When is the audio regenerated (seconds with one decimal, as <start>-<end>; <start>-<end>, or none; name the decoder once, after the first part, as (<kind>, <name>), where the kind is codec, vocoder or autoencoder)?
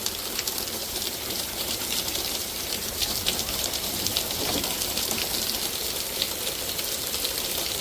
0.8-5.2 (vocoder, BigVGAN v2)